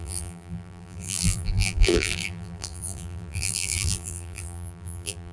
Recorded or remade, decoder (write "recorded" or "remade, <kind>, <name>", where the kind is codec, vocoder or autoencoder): remade, vocoder, BigVGAN v2